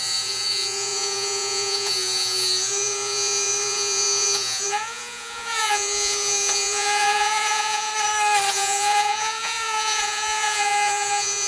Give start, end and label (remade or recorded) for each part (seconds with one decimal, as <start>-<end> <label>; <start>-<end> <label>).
0.0-7.9 remade; 7.9-8.5 recorded; 8.5-11.5 remade